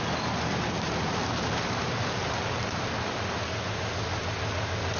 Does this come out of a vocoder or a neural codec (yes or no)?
no